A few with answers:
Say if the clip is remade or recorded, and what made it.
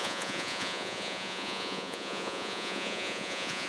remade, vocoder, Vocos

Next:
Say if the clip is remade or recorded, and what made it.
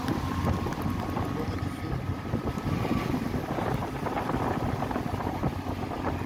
recorded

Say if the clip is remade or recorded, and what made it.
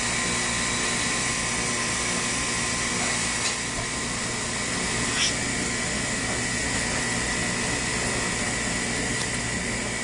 recorded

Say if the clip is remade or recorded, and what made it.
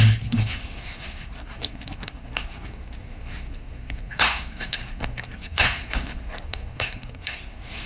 remade, codec, SNAC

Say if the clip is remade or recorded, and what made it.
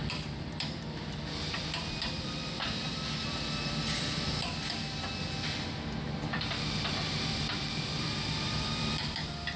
remade, vocoder, BigVGAN v2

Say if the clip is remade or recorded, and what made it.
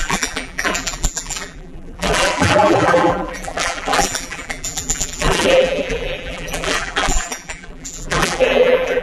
remade, vocoder, BigVGAN v2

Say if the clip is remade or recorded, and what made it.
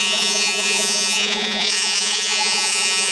remade, vocoder, Vocos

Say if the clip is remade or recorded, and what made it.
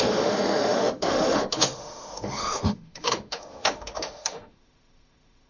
remade, autoencoder, DAC-VAE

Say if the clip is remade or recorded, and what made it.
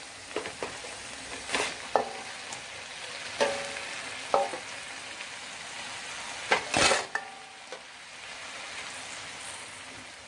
recorded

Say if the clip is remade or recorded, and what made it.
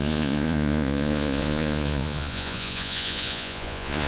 remade, vocoder, Vocos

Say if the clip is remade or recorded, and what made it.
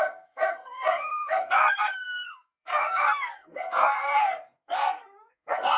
remade, codec, SNAC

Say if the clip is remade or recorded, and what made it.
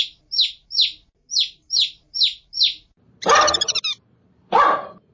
recorded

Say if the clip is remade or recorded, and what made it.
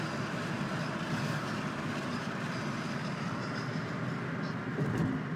recorded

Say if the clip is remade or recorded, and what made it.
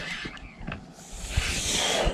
recorded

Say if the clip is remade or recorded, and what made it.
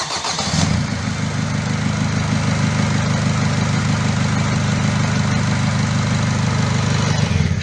recorded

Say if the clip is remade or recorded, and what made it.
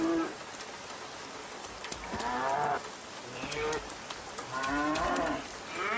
recorded